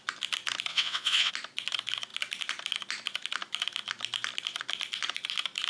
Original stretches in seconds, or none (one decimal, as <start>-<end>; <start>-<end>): 0.0-0.7; 1.3-5.7